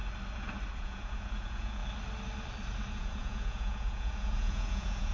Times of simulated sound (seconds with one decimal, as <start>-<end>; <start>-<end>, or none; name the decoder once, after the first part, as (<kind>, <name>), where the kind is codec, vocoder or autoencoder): 0.7-1.8 (vocoder, Vocos); 2.9-5.1